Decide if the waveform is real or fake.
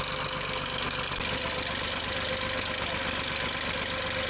real